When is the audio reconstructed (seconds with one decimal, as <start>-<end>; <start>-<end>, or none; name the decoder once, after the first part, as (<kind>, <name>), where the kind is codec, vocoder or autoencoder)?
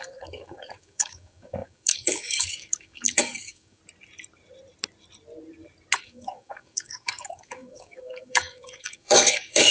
0.0-3.8 (codec, DAC); 6.0-9.7